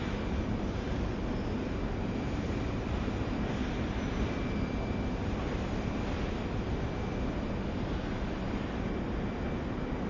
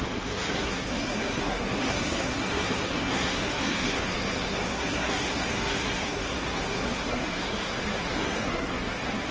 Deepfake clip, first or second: second